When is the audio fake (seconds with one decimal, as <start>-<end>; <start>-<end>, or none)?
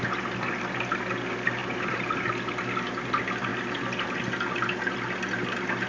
none